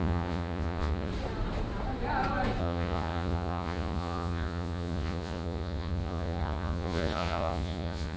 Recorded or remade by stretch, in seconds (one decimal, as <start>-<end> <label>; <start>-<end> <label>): 0.0-1.1 remade; 1.1-2.6 recorded; 2.6-8.2 remade